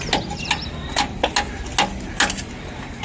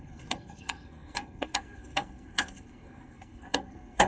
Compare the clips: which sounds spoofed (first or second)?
second